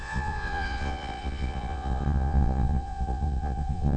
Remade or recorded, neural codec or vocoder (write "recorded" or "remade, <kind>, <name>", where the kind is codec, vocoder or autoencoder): remade, vocoder, Vocos